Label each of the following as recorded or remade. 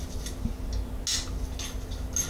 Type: recorded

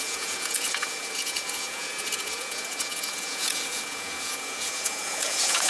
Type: remade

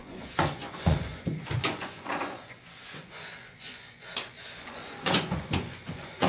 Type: remade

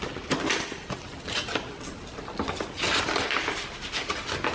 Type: recorded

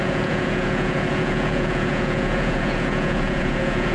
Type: remade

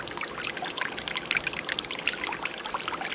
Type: recorded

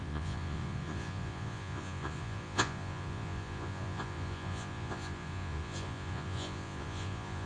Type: remade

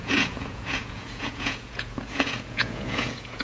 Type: remade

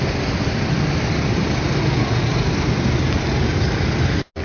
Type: recorded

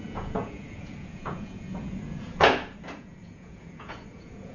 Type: remade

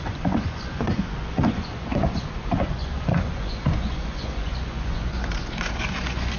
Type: remade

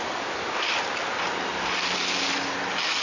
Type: recorded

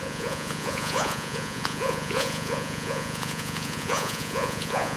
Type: remade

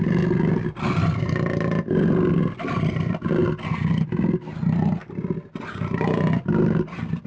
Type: recorded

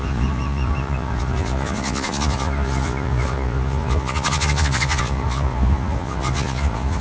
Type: remade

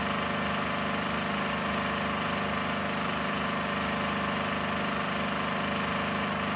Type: recorded